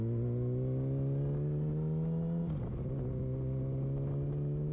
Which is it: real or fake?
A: real